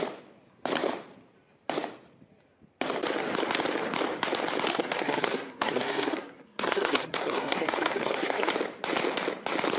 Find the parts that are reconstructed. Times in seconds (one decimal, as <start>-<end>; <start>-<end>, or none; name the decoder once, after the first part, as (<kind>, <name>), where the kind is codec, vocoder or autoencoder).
4.7-8.5 (codec, SNAC)